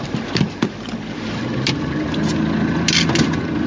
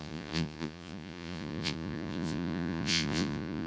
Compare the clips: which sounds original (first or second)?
first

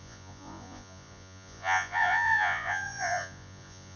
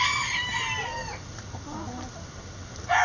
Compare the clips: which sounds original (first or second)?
second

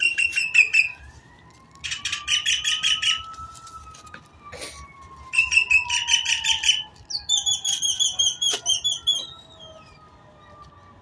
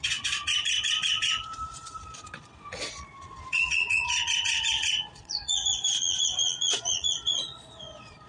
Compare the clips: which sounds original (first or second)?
first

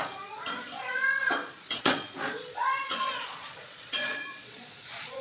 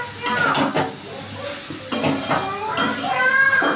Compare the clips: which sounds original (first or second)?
second